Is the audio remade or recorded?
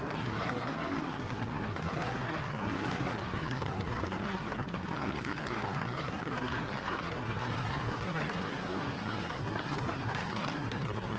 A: remade